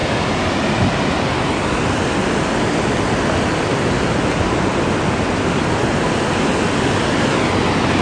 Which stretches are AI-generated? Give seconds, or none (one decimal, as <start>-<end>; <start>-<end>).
none